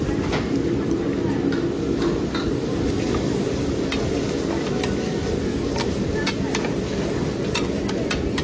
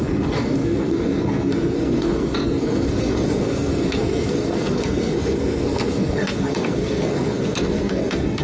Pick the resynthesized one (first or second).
second